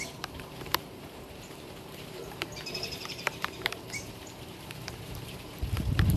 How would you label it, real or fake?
fake